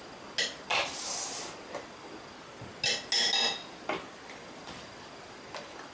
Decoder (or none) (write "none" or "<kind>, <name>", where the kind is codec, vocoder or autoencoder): none